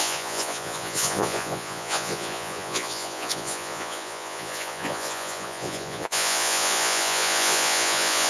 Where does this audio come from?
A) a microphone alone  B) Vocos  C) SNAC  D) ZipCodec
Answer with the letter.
B